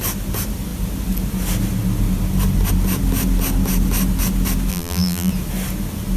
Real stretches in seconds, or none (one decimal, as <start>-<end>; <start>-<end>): 0.0-4.7; 5.3-6.2